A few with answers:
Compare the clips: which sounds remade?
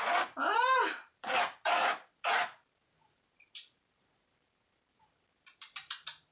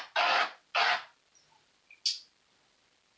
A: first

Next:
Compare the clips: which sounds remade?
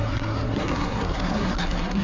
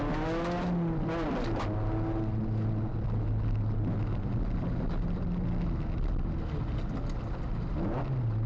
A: first